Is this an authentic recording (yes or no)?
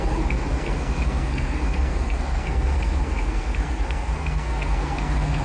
no